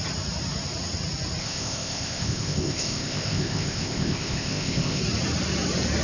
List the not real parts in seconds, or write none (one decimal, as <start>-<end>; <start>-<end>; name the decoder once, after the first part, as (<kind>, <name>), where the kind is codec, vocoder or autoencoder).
1.4-5.0 (codec, ZipCodec)